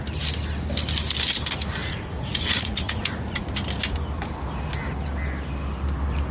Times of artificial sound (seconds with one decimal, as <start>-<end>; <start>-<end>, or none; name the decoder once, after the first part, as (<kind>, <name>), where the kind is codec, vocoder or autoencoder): 1.8-3.5 (vocoder, Vocos)